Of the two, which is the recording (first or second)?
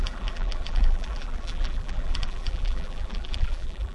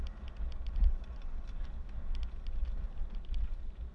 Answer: second